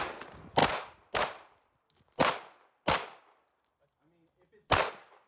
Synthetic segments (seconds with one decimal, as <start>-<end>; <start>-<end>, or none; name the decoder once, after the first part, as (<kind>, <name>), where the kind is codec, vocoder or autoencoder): none